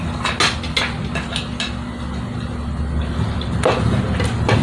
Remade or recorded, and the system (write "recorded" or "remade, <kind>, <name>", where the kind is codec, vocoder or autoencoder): recorded